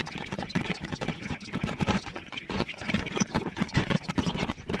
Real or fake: fake